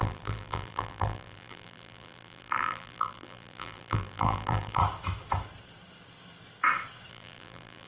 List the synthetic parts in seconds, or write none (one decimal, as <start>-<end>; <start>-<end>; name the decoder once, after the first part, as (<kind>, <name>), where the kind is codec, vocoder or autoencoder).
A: 0.0-4.8 (vocoder, BigVGAN v2); 7.1-7.9